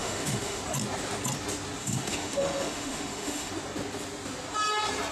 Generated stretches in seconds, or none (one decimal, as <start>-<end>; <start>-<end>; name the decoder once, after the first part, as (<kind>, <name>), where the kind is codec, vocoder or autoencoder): 0.0-0.6 (autoencoder, DAC-VAE); 1.8-3.5